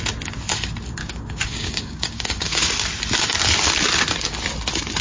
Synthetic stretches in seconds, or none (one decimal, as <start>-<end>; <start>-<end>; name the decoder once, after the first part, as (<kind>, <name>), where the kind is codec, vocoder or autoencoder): 1.0-2.7 (codec, DAC)